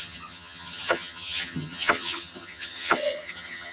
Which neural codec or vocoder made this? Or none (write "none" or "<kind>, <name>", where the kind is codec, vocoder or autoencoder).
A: vocoder, HiFi-GAN